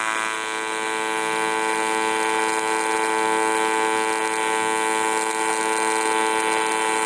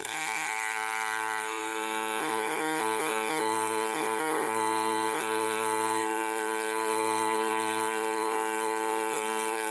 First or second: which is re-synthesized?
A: second